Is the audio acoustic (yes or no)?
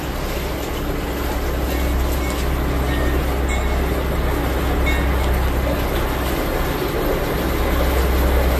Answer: yes